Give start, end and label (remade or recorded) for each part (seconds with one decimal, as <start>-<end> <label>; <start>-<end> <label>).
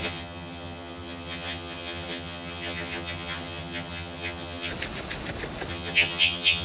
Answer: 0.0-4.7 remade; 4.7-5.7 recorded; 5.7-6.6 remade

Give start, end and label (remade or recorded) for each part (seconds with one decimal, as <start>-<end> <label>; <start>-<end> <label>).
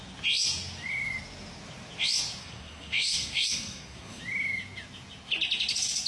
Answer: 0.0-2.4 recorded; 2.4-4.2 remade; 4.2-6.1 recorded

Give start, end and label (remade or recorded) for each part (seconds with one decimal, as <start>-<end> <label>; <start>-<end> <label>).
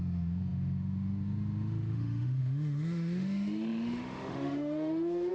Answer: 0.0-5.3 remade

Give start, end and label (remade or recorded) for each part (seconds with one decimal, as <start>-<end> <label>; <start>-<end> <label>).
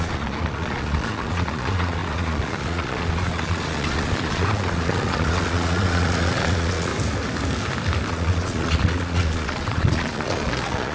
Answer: 0.0-6.9 remade; 6.9-8.1 recorded; 8.1-10.9 remade